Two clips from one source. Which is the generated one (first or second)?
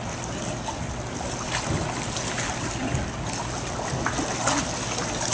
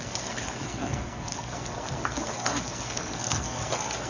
second